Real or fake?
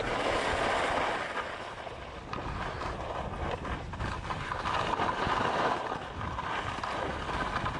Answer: real